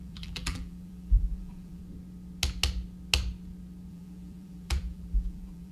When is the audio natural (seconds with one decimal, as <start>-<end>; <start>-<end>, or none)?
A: 1.8-3.9